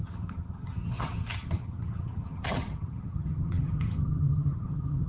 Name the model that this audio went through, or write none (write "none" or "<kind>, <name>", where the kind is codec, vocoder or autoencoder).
vocoder, HiFi-GAN